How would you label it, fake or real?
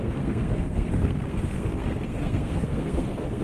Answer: fake